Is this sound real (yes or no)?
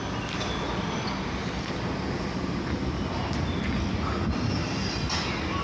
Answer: no